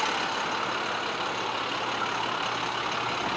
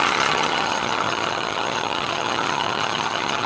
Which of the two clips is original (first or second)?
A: first